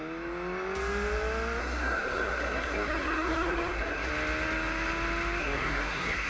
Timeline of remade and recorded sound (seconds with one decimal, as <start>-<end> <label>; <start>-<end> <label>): 0.0-1.6 recorded; 1.6-4.1 remade; 4.1-5.4 recorded; 5.4-6.3 remade